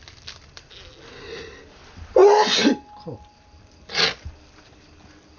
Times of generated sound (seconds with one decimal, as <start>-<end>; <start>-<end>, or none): none